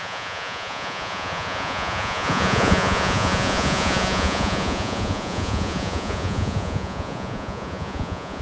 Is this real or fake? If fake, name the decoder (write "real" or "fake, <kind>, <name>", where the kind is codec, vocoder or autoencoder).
fake, vocoder, Vocos